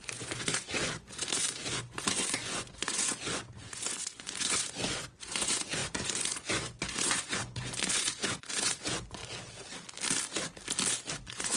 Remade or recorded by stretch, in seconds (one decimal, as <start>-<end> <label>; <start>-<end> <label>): 0.0-9.2 remade; 9.2-11.1 recorded; 11.1-11.6 remade